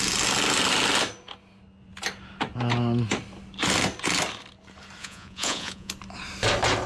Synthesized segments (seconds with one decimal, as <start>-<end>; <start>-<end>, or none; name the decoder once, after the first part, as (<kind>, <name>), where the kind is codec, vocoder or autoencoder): 5.0-5.9 (vocoder, Vocos)